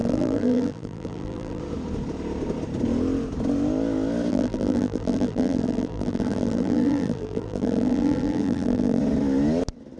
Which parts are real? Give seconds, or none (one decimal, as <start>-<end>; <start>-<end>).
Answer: 1.6-4.3; 9.0-10.0